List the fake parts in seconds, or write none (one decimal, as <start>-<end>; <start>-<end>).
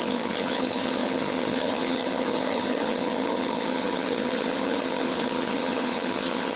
0.0-6.6